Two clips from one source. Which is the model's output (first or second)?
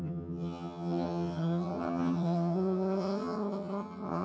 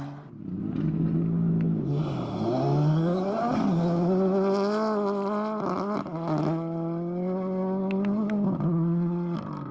first